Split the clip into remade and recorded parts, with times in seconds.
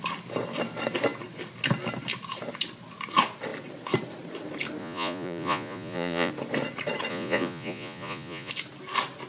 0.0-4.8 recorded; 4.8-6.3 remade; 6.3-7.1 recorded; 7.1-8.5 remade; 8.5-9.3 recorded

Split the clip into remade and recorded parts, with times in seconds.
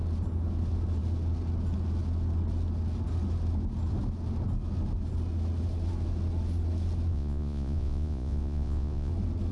0.0-7.1 recorded; 7.1-9.1 remade; 9.1-9.5 recorded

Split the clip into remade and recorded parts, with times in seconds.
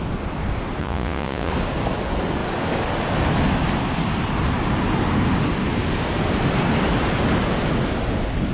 0.0-0.8 recorded; 0.8-1.5 remade; 1.5-8.5 recorded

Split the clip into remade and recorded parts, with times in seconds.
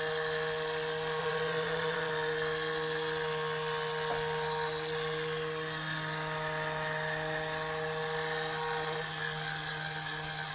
0.0-1.2 recorded; 1.2-2.1 remade; 2.1-10.5 recorded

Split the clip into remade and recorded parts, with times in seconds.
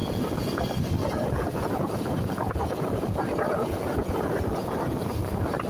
0.0-0.6 remade; 0.6-1.0 recorded; 1.0-4.4 remade; 4.4-5.7 recorded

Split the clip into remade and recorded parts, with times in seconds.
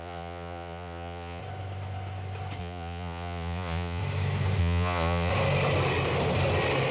0.0-1.4 remade; 1.4-2.6 recorded; 2.6-4.0 remade; 4.0-4.6 recorded; 4.6-5.3 remade; 5.3-6.9 recorded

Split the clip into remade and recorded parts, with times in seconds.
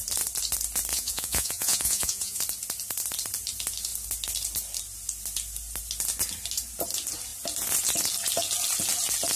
0.0-0.9 recorded; 0.9-2.4 remade; 2.4-9.4 recorded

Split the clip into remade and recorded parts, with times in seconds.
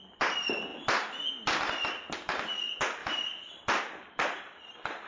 0.0-5.1 recorded